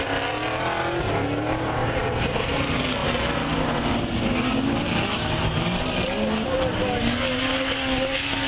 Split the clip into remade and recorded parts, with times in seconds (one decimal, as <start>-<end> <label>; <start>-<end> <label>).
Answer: 0.0-8.5 recorded